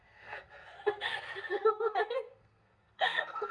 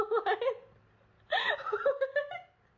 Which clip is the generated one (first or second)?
first